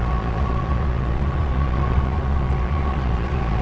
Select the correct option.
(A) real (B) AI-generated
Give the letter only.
B